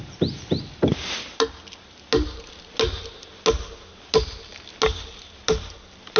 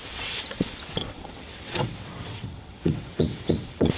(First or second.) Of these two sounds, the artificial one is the second